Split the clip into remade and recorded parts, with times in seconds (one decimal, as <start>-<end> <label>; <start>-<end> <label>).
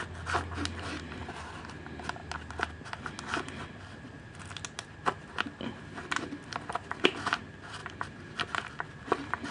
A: 0.0-9.5 recorded